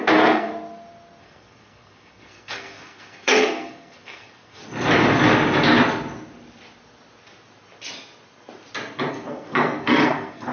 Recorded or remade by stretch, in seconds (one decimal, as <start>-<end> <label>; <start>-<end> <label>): 0.0-0.5 remade; 0.5-1.2 recorded; 1.2-4.6 remade; 4.6-9.1 recorded; 9.1-10.5 remade